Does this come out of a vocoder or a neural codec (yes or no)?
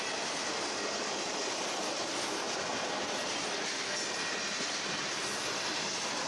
no